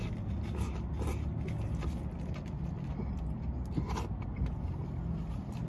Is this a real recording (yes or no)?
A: yes